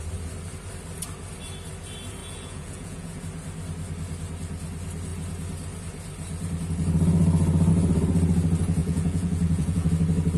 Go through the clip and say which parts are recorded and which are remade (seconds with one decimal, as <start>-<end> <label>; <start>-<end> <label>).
0.0-2.2 recorded; 2.2-3.2 remade; 3.2-8.8 recorded; 8.8-9.9 remade; 9.9-10.4 recorded